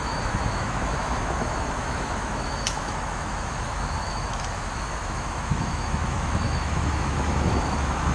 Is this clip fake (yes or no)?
yes